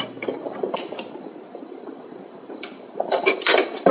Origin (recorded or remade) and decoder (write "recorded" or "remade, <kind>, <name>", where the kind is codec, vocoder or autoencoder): remade, vocoder, BigVGAN v2